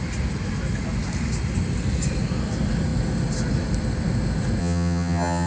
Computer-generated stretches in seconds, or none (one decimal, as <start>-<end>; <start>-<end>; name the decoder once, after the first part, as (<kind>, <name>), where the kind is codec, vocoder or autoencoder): 4.6-5.5 (vocoder, HiFi-GAN)